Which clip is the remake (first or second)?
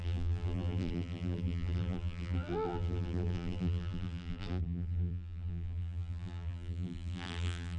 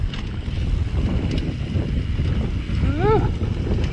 first